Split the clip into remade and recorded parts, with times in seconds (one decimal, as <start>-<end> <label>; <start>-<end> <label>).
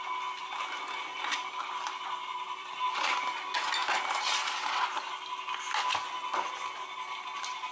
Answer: 0.0-0.4 recorded; 0.4-3.3 remade; 3.3-7.7 recorded